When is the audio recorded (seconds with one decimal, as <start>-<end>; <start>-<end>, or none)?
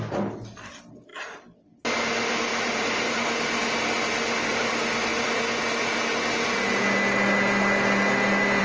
0.0-1.1; 1.8-2.5; 3.1-8.6